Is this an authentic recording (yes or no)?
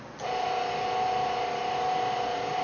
yes